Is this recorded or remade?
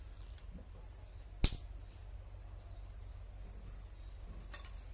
recorded